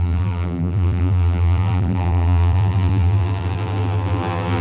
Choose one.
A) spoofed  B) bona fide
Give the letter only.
A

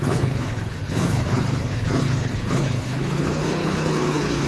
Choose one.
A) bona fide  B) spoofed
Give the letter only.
B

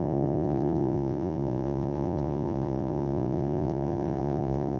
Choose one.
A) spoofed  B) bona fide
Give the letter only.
A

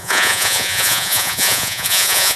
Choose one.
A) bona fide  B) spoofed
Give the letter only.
B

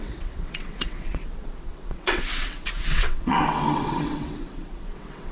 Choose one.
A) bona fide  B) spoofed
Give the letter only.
B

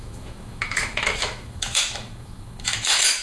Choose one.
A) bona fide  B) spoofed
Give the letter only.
B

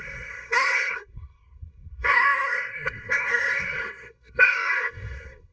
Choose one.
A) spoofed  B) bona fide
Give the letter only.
A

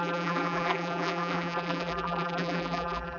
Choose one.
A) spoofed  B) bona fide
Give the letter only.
A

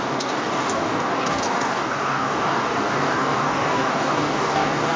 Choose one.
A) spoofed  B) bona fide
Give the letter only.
A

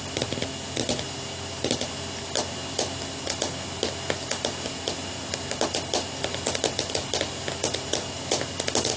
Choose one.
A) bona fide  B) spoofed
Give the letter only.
A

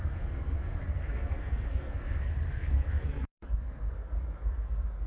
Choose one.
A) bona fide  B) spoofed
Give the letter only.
B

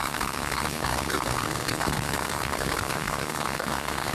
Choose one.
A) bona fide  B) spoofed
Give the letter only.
B